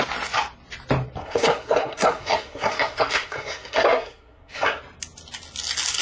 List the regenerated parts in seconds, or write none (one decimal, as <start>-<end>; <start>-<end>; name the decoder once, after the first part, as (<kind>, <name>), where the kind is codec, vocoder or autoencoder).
1.2-4.8 (codec, SNAC)